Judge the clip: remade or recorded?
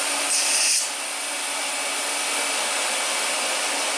recorded